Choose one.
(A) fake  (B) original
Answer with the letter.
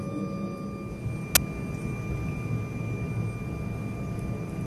B